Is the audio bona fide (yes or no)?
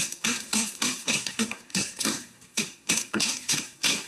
no